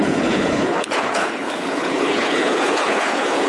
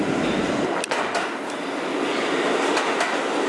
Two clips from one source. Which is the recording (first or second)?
second